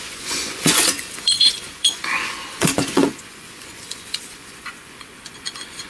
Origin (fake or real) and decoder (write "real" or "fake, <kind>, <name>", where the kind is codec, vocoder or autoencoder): fake, vocoder, Vocos